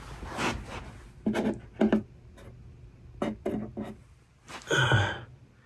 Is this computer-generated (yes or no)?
no